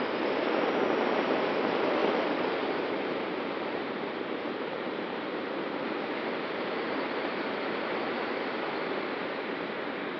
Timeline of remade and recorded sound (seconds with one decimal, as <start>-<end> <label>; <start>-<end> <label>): 0.0-2.0 recorded; 2.0-6.2 remade; 6.2-10.2 recorded